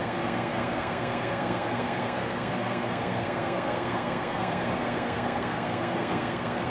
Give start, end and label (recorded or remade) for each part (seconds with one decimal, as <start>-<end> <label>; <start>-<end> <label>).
0.0-6.7 remade